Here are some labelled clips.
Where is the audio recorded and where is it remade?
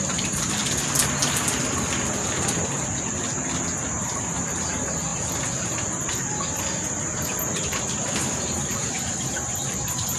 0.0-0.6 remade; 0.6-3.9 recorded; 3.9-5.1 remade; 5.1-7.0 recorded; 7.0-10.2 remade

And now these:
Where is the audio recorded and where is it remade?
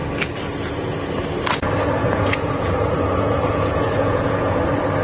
0.0-2.0 recorded; 2.0-4.6 remade; 4.6-5.0 recorded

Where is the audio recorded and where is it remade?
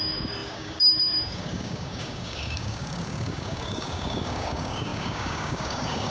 0.0-6.1 remade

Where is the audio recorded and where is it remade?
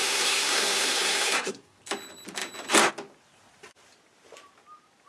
0.0-1.8 remade; 1.8-5.1 recorded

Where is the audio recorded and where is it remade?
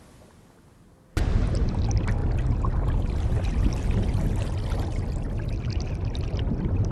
0.0-6.9 recorded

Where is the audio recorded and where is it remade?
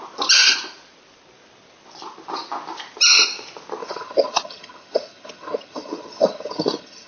0.0-3.8 recorded; 3.8-7.1 remade